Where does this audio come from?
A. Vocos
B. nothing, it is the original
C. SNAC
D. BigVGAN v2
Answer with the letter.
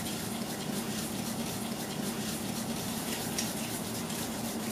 B